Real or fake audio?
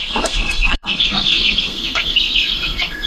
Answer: fake